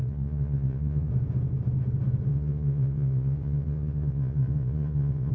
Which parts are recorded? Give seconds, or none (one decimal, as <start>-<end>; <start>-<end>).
1.1-2.3